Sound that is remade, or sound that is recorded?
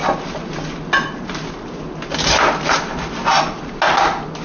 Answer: recorded